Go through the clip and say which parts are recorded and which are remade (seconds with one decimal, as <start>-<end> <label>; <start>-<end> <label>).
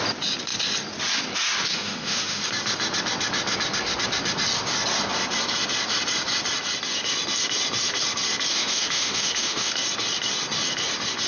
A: 0.0-1.7 recorded; 1.7-2.4 remade; 2.4-8.5 recorded; 8.5-9.7 remade; 9.7-11.3 recorded